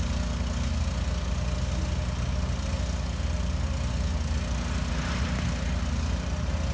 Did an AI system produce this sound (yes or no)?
no